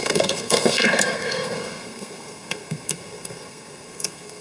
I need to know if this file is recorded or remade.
remade